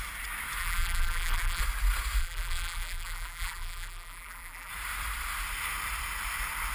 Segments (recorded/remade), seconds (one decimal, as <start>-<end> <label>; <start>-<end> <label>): 0.0-0.6 recorded; 0.6-1.6 remade; 1.6-2.2 recorded; 2.2-4.7 remade; 4.7-6.7 recorded